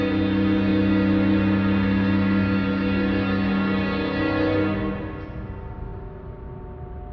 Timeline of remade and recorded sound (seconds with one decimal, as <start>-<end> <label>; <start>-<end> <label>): 0.0-7.1 recorded